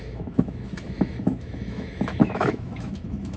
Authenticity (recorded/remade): remade